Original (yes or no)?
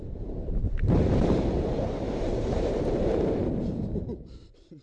no